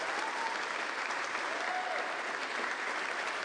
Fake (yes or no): no